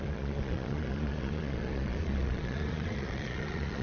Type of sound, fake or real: fake